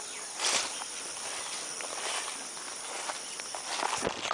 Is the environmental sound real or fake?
real